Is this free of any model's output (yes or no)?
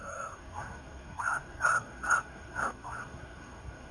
no